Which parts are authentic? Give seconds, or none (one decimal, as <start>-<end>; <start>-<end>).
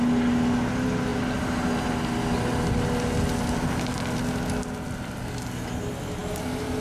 0.0-6.8